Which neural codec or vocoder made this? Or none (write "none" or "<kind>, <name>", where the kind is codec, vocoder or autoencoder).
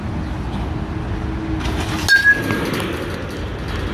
none